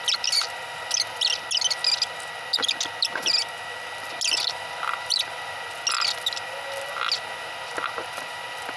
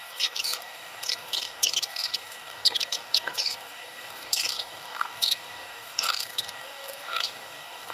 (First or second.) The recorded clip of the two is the first